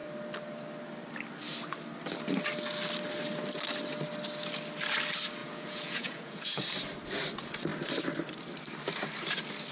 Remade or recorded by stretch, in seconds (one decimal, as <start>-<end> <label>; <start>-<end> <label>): 0.0-5.4 recorded; 5.4-6.6 remade; 6.6-9.7 recorded